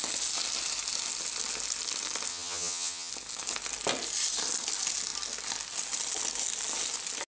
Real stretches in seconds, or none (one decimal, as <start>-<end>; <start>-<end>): 0.0-2.3; 3.1-7.3